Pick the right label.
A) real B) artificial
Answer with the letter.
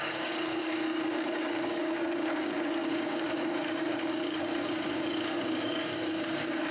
B